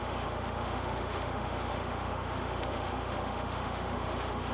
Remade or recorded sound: remade